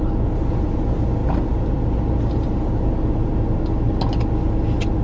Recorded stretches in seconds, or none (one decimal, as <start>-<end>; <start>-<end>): 0.0-5.0